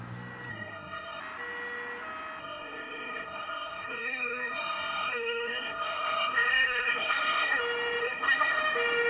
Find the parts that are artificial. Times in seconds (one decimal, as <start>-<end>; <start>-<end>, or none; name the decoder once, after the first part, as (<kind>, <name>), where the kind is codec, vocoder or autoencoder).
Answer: 0.5-1.2 (codec, SNAC); 2.4-7.6; 8.0-8.6